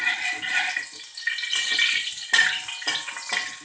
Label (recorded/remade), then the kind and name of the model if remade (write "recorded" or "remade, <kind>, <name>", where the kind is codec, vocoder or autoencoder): recorded